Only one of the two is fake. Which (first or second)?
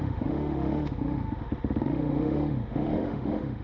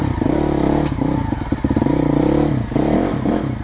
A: first